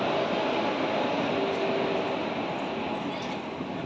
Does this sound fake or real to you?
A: real